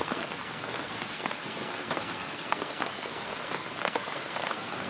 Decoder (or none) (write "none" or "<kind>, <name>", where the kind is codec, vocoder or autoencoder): codec, SNAC